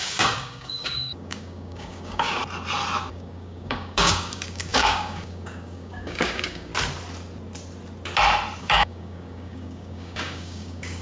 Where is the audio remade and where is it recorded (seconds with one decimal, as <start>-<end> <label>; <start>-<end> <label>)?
0.0-2.4 remade; 2.4-3.1 recorded; 3.1-6.7 remade; 6.7-8.6 recorded; 8.6-11.0 remade